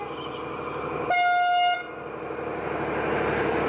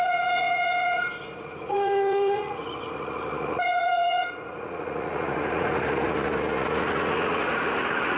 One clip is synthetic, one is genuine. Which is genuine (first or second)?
first